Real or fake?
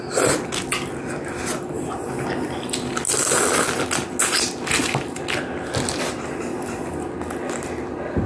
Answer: real